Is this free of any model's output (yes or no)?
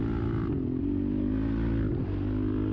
yes